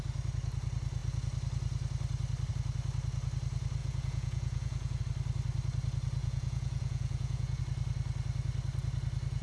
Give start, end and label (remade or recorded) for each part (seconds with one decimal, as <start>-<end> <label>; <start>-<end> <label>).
0.0-3.8 recorded; 3.8-5.0 remade; 5.0-6.2 recorded; 6.2-7.6 remade; 7.6-9.4 recorded